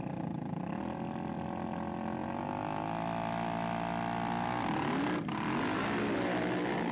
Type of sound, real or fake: real